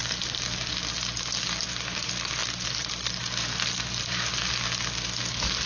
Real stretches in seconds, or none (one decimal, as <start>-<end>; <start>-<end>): 0.0-5.7